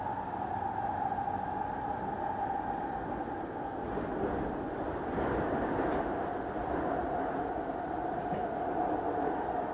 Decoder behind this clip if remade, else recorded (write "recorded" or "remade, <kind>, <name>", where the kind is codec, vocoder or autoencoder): recorded